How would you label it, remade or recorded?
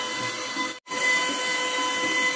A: recorded